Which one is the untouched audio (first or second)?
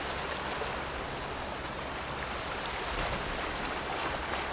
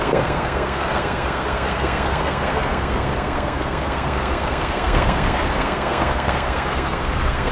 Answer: first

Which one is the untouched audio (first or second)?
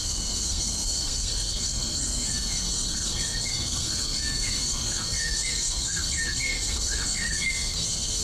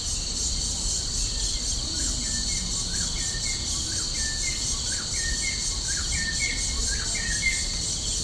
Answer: second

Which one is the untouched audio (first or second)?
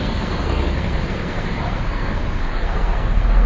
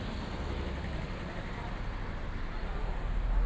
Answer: second